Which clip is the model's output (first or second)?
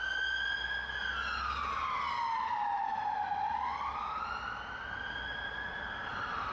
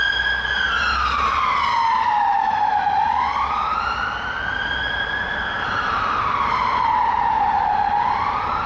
second